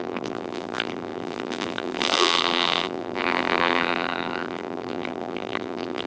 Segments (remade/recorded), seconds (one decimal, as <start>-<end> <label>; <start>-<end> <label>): 0.0-6.1 remade